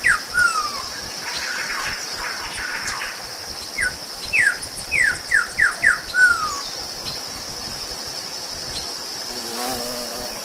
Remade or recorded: recorded